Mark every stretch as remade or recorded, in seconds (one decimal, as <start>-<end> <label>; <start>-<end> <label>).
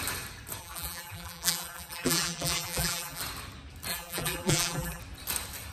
0.0-0.6 recorded; 0.6-3.2 remade; 3.2-3.9 recorded; 3.9-5.0 remade; 5.0-5.7 recorded